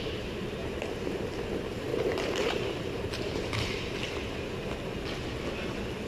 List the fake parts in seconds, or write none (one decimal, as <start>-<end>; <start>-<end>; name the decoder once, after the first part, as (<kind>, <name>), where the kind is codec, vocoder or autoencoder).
0.6-1.2 (vocoder, BigVGAN v2); 1.9-3.9